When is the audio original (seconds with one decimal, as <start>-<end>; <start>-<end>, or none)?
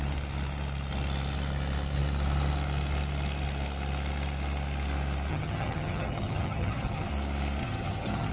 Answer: 0.0-5.3; 7.1-7.6